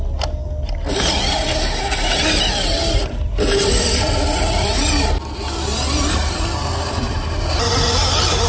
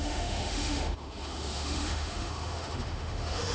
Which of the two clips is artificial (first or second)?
second